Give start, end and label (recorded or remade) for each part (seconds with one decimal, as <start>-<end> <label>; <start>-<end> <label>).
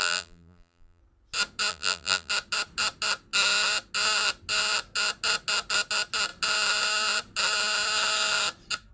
0.0-1.0 remade; 1.0-1.7 recorded; 1.7-2.3 remade; 2.3-8.9 recorded